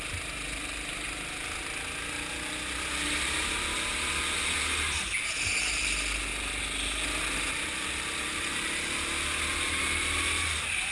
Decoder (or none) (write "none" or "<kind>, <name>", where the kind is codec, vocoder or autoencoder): none